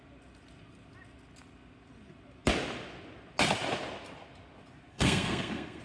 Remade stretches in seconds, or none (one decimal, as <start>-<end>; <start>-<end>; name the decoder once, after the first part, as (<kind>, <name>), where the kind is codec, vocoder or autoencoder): 4.9-5.8 (codec, SNAC)